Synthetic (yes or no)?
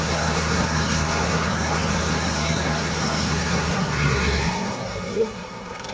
yes